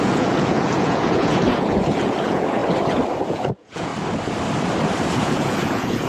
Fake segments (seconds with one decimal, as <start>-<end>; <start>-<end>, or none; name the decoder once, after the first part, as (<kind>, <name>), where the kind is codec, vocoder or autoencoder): 0.0-2.6 (vocoder, Vocos); 3.2-3.9; 5.2-6.1